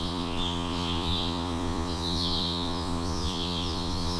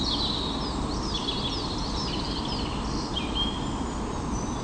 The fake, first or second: first